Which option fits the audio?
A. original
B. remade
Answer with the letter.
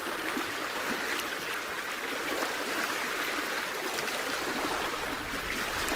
A